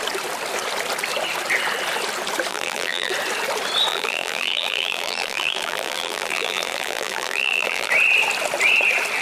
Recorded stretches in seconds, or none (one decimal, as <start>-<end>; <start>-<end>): 0.0-2.5; 3.1-3.9; 7.9-9.2

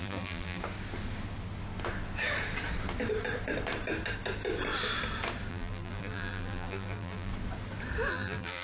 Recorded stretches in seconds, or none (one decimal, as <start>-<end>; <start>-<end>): 0.6-5.5; 7.3-8.1

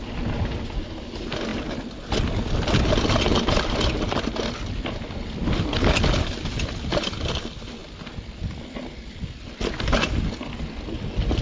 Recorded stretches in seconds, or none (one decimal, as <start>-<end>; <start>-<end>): 0.0-11.4